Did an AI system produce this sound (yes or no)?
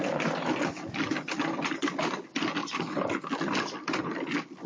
no